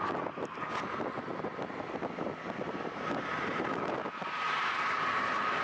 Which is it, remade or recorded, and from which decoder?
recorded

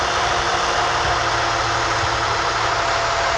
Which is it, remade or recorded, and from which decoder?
recorded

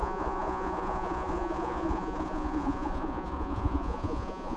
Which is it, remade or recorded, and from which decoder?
remade, vocoder, Vocos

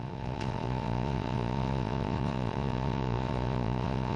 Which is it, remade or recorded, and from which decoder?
remade, vocoder, Vocos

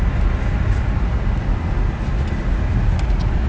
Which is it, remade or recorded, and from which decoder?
recorded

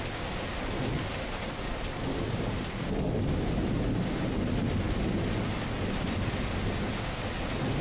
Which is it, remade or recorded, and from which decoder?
recorded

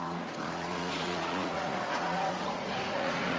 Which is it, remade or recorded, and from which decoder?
remade, vocoder, Vocos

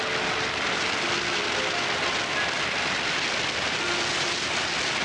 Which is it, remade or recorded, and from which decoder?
recorded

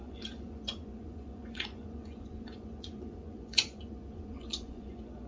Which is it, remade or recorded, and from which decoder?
remade, vocoder, Vocos